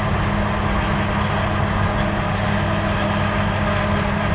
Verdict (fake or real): real